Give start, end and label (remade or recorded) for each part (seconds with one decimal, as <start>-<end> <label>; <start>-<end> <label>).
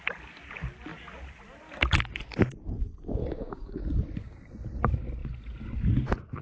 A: 0.0-3.2 recorded; 3.2-3.8 remade; 3.8-6.4 recorded